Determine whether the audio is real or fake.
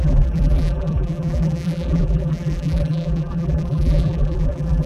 fake